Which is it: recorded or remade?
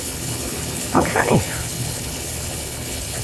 remade